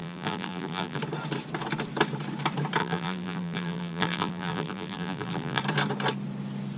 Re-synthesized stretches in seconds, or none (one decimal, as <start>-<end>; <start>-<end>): 0.0-1.0; 2.8-5.6